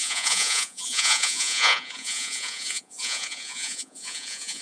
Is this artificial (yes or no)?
yes